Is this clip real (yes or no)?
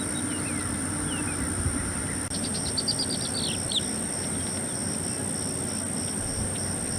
yes